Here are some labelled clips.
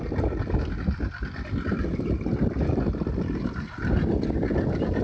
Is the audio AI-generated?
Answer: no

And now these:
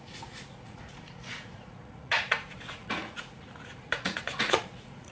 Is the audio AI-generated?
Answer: yes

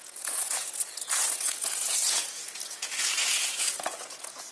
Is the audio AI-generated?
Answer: yes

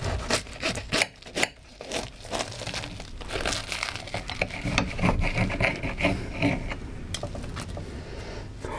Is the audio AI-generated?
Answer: no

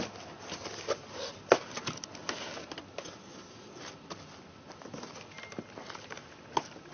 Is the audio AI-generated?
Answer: no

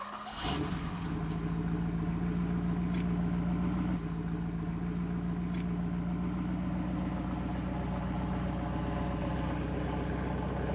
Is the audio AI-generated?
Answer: no